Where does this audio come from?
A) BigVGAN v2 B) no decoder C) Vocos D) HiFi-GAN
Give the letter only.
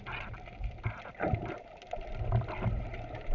B